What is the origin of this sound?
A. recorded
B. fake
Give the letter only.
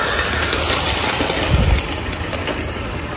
A